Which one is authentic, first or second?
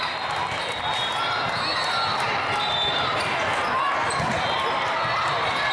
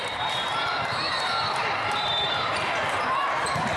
first